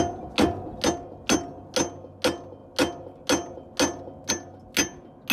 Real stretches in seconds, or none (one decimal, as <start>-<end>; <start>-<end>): 0.0-5.3